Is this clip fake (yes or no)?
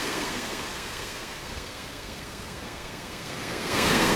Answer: yes